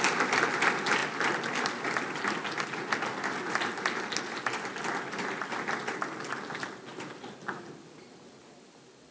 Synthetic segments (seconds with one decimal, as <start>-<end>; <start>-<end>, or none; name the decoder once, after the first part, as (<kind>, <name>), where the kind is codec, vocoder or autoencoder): none